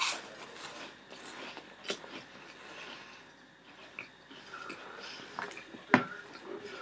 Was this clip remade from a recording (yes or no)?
no